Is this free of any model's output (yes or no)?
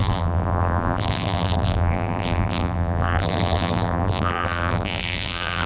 no